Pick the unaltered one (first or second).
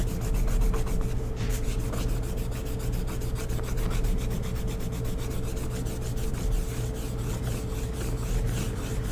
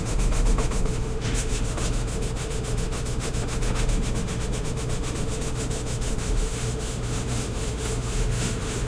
first